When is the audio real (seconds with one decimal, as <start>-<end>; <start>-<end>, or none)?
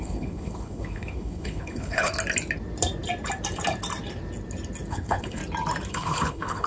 2.1-4.9; 5.4-5.9